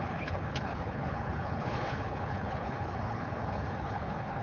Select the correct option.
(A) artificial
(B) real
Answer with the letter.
A